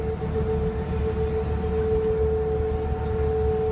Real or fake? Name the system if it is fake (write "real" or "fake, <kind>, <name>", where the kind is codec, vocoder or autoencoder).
real